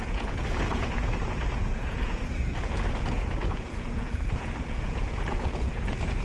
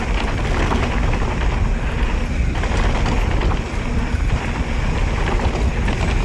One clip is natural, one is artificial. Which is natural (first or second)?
second